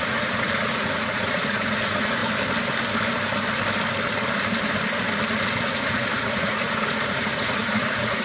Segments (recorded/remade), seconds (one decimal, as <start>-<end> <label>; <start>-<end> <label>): 0.0-2.2 remade; 2.2-5.7 recorded; 5.7-8.2 remade